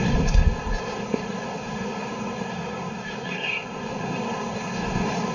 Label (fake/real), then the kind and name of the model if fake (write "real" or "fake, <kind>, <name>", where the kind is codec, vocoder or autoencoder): fake, codec, SNAC